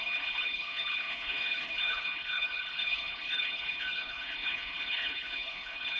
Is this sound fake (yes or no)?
yes